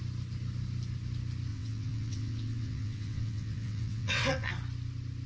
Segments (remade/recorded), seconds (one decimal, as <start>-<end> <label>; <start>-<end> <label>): 0.0-1.5 recorded; 1.5-4.5 remade; 4.5-5.3 recorded